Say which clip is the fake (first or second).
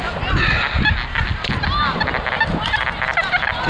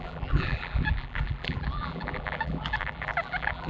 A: second